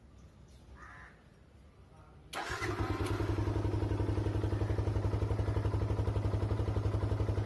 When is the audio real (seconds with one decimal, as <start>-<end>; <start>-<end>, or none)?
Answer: 0.0-7.5